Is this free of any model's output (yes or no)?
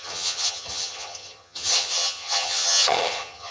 no